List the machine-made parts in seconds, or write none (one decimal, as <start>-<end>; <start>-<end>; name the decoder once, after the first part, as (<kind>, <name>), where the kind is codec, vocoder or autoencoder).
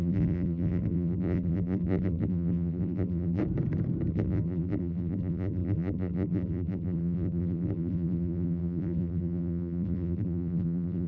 0.0-3.4 (vocoder, BigVGAN v2); 4.1-11.1